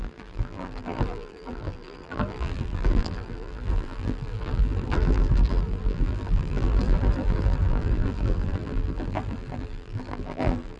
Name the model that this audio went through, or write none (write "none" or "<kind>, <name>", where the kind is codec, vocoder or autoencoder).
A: vocoder, BigVGAN v2